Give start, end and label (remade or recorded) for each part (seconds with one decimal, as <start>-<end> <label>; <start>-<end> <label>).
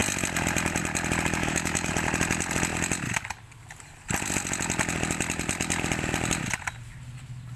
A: 0.0-1.4 recorded; 1.4-1.9 remade; 1.9-7.6 recorded